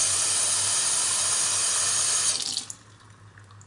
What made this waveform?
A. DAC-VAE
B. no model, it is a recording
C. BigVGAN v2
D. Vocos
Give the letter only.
B